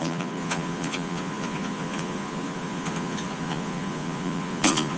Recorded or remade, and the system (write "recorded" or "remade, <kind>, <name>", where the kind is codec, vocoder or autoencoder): remade, vocoder, Vocos